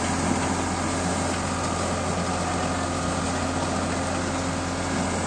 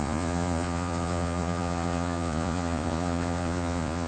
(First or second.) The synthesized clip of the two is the second